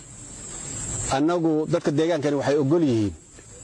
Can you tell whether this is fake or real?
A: real